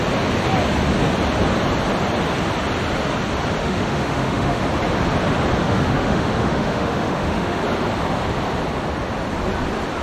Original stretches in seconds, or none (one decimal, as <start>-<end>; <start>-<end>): 0.0-3.6; 4.6-5.6; 7.6-10.0